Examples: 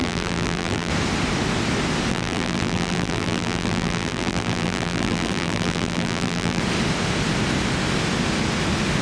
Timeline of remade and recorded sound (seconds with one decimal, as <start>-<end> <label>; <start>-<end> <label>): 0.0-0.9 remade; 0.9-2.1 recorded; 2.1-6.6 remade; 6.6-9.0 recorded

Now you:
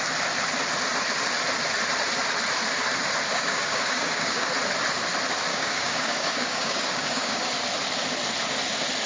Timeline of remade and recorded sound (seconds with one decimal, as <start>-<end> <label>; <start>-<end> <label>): 0.0-3.3 recorded; 3.3-4.5 remade; 4.5-5.5 recorded; 5.5-7.5 remade; 7.5-9.1 recorded

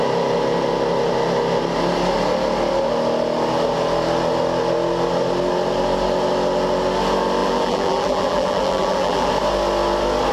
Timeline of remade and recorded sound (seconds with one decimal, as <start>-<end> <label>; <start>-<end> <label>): 0.0-7.4 recorded; 7.4-9.3 remade; 9.3-10.3 recorded

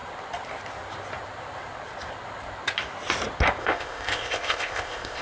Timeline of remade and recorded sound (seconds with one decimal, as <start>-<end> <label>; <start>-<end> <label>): 0.0-3.6 recorded; 3.6-5.2 remade

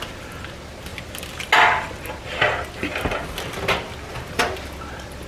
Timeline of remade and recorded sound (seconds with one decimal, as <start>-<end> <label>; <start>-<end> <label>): 0.0-5.3 recorded

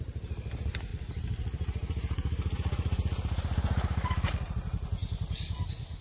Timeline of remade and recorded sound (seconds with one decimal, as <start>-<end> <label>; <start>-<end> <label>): 0.0-0.9 recorded; 0.9-4.3 remade; 4.3-6.0 recorded

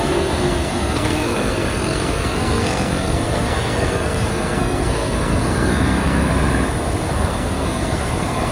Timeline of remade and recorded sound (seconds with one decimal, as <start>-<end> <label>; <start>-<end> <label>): 0.0-6.3 remade; 6.3-7.1 recorded; 7.1-8.5 remade